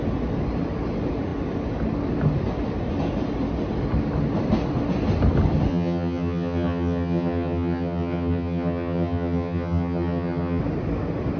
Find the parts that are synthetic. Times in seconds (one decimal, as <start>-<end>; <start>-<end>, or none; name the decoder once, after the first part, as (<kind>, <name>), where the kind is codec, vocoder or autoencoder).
5.7-10.6 (vocoder, HiFi-GAN)